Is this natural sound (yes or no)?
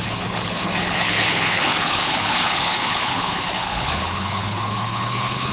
no